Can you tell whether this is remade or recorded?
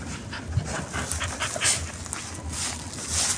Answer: recorded